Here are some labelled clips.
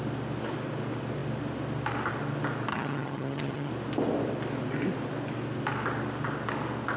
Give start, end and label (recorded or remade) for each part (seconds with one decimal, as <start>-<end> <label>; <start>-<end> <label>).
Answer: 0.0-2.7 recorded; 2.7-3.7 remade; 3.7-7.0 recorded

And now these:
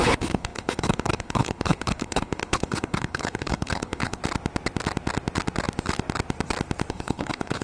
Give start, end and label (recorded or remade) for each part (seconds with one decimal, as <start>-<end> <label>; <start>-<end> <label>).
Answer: 0.0-4.2 remade; 4.2-6.9 recorded; 6.9-7.6 remade

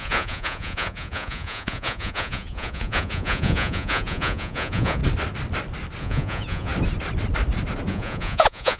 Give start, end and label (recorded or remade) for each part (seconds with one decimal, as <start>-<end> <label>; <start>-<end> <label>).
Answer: 0.0-5.0 remade; 5.0-6.0 recorded; 6.0-6.7 remade; 6.7-7.9 recorded; 7.9-8.8 remade

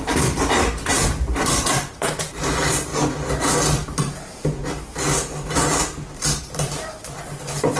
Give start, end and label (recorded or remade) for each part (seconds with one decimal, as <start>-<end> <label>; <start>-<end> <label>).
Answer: 0.0-2.9 remade; 2.9-4.0 recorded; 4.0-4.6 remade; 4.6-6.4 recorded; 6.4-7.8 remade